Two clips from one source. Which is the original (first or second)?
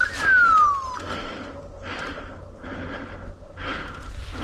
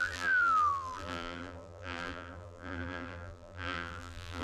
first